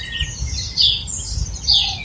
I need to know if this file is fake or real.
real